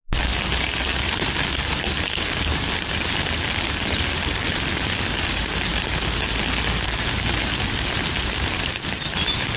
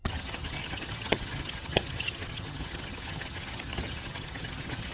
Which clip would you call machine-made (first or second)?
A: second